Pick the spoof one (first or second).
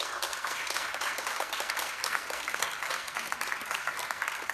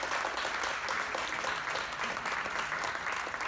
first